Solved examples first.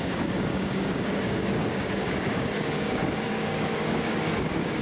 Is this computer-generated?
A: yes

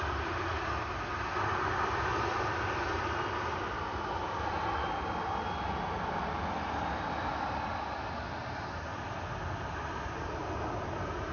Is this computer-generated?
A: no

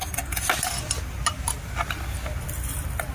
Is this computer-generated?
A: no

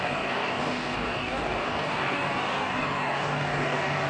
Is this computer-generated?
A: yes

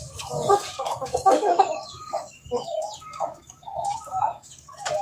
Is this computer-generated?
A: yes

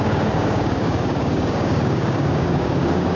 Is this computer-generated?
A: yes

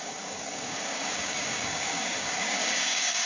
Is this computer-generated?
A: yes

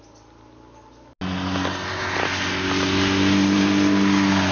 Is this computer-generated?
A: no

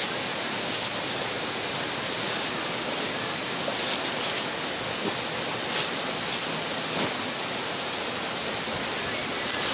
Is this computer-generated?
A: no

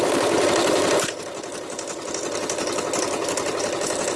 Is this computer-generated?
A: no